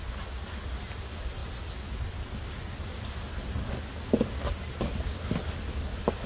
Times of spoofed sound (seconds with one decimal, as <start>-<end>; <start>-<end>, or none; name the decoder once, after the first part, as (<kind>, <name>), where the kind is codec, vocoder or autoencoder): none